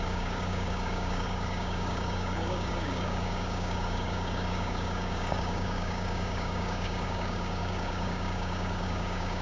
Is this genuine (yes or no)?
no